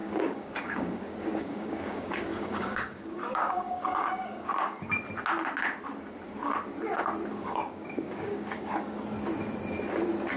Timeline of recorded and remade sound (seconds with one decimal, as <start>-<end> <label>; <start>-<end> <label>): 0.0-4.9 remade; 4.9-7.3 recorded; 7.3-9.0 remade; 9.0-10.4 recorded